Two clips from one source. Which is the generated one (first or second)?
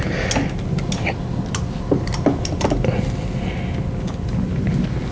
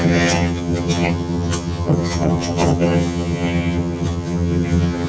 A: second